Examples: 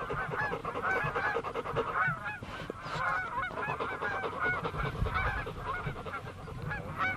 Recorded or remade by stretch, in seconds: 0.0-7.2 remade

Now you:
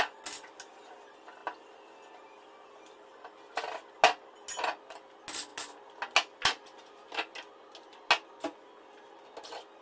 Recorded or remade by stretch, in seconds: 0.0-9.8 recorded

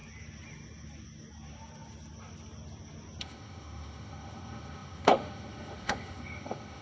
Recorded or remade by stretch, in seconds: 0.0-3.2 recorded; 3.2-6.8 remade

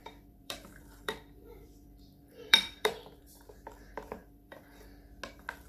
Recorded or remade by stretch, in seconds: 0.0-3.4 remade; 3.4-4.2 recorded; 4.2-4.7 remade; 4.7-5.7 recorded

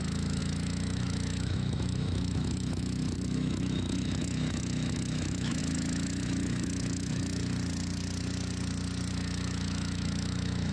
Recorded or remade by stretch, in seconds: 0.0-7.4 remade; 7.4-9.1 recorded; 9.1-10.7 remade

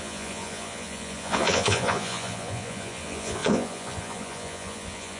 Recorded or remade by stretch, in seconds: 0.0-5.2 remade

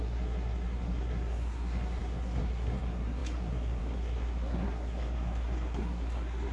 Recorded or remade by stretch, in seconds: 0.0-6.5 remade